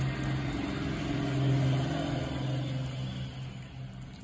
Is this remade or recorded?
recorded